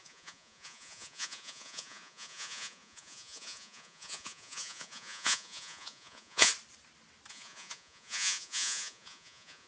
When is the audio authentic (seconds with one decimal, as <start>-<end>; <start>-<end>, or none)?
6.5-7.3